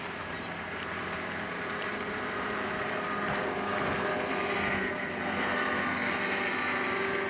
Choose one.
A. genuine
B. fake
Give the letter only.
B